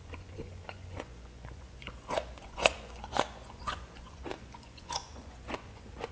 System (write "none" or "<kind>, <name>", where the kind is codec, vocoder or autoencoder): vocoder, Vocos